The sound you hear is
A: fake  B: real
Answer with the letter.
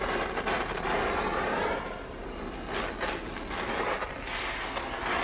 B